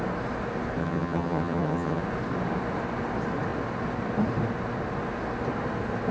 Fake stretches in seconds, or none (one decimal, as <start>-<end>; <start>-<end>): 0.8-2.0